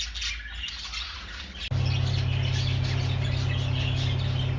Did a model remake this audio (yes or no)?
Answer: no